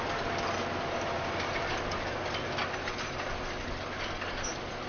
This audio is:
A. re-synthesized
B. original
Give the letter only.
B